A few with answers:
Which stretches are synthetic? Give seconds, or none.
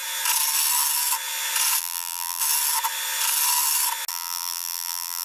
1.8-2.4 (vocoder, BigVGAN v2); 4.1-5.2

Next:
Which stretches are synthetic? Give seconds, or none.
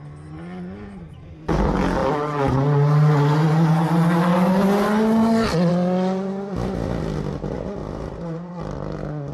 7.8-8.5 (vocoder, BigVGAN v2)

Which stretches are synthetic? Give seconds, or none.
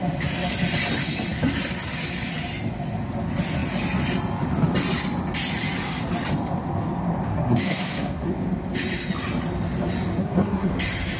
7.3-8.3 (codec, SNAC); 10.2-10.7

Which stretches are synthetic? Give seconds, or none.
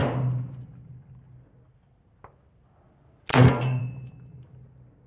3.3-3.8 (codec, SNAC)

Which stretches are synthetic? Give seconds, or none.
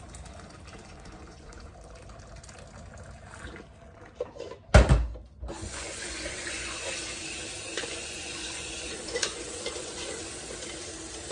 0.8-1.7 (vocoder, Vocos); 5.5-6.9; 7.7-10.4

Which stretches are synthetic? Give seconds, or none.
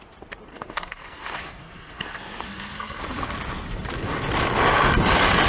0.5-3.0 (codec, SNAC)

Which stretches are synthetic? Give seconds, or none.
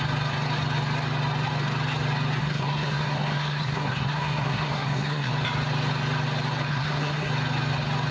2.4-5.3 (codec, SNAC); 6.7-7.3